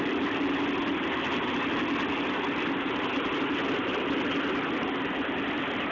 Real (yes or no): yes